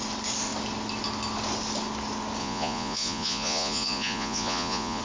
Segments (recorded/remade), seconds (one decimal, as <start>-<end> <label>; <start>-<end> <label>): 0.0-2.4 recorded; 2.4-5.0 remade